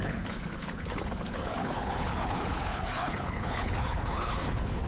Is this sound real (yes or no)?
no